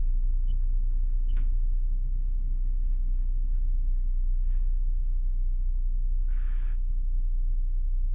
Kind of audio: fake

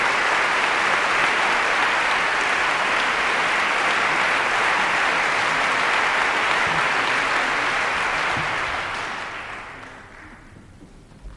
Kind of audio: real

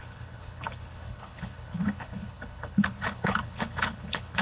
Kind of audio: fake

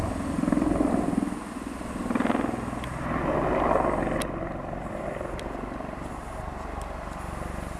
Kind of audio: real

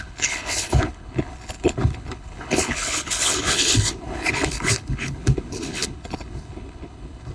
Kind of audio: fake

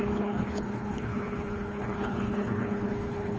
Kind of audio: fake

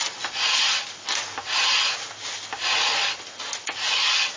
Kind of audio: real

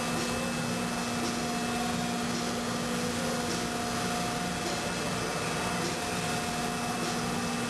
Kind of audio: real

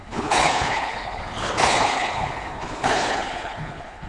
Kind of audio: fake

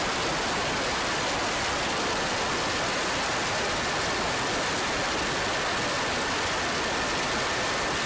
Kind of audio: real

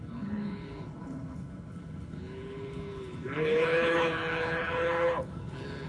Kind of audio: fake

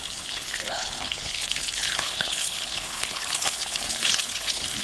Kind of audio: fake